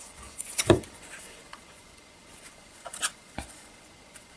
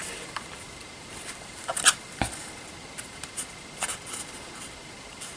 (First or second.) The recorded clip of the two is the second